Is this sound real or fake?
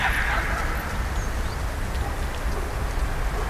real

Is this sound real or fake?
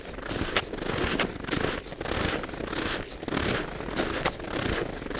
real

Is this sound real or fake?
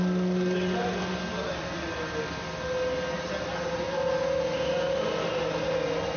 real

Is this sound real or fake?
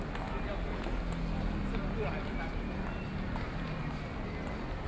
real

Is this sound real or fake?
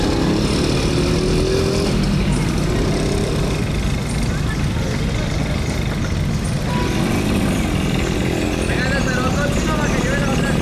real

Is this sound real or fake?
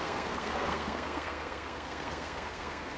fake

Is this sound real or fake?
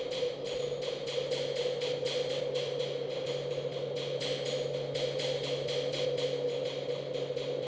real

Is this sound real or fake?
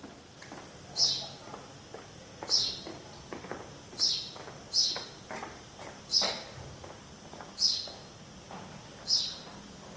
real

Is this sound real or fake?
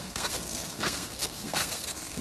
fake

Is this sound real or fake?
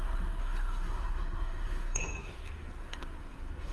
fake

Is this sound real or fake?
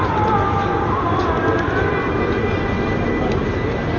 real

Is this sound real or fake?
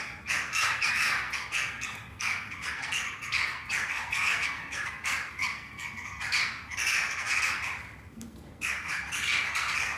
fake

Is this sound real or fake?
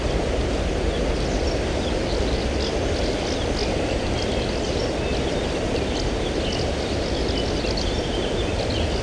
real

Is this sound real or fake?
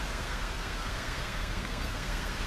fake